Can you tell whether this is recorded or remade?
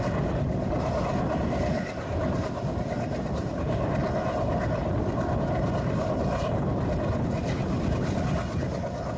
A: recorded